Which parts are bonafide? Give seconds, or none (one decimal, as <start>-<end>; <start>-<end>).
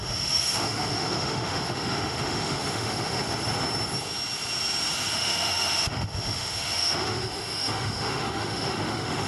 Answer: 3.2-5.1